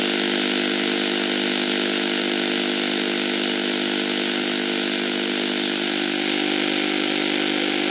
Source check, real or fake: real